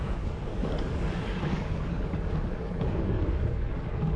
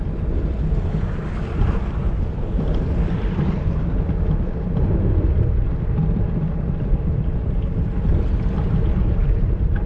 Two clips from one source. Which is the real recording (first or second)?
second